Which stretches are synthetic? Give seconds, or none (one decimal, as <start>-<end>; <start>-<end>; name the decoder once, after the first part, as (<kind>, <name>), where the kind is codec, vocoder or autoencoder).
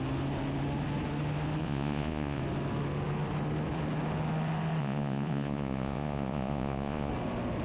1.6-2.4 (vocoder, Vocos); 4.8-7.1